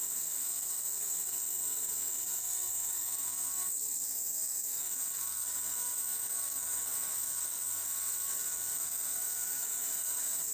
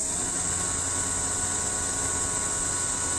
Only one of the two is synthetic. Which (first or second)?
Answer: first